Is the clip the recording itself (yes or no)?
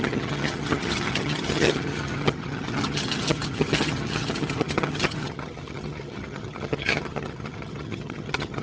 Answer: no